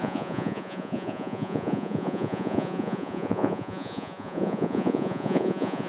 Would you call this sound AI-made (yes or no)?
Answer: yes